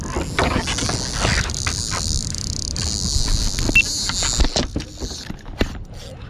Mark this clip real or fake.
real